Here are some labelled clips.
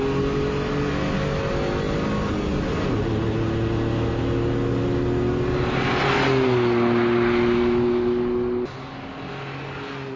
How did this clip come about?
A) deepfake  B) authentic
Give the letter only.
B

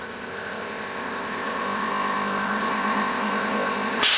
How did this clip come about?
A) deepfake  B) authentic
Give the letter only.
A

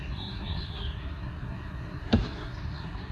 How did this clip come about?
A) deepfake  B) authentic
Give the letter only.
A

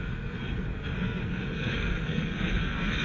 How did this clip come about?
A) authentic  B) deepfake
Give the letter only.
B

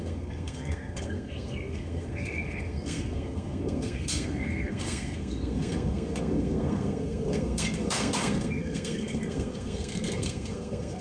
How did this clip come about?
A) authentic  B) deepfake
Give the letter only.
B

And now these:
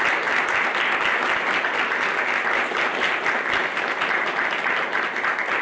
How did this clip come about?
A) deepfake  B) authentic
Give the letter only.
B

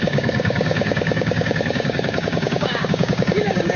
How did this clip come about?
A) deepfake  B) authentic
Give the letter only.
A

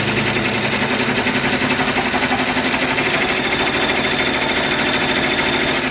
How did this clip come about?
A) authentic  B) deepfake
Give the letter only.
A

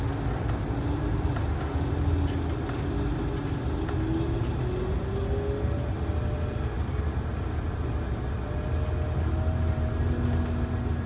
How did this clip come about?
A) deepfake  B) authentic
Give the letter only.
B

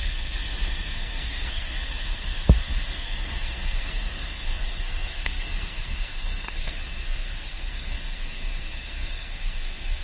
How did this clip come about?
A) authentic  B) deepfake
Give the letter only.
B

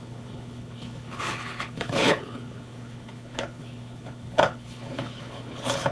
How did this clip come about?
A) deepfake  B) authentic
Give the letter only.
A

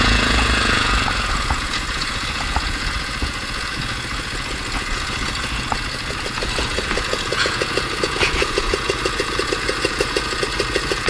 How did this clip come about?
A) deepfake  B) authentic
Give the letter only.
A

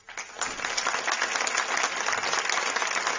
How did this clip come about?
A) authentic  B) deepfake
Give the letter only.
A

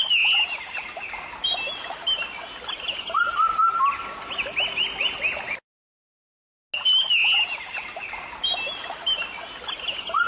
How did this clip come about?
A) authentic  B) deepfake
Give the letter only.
A